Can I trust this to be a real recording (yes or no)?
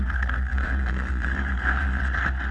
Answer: no